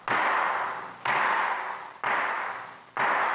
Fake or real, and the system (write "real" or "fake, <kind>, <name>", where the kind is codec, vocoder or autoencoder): real